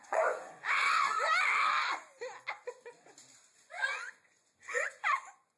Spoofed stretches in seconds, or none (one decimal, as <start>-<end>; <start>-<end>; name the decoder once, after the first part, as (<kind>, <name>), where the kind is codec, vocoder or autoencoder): 0.0-0.8 (vocoder, Vocos); 3.6-5.6